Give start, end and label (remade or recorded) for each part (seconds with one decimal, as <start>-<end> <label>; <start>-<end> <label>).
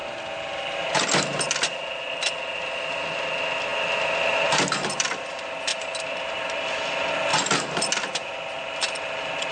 0.0-9.5 recorded